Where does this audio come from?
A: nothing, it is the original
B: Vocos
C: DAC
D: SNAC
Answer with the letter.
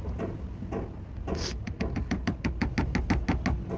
A